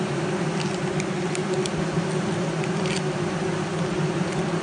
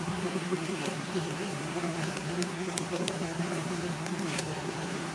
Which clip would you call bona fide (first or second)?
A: first